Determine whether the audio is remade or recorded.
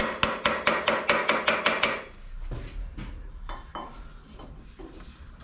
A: recorded